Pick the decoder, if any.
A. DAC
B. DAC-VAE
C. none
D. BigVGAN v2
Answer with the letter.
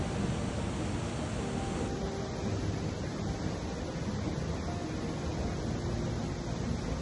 C